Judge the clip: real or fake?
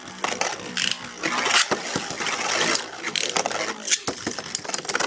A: real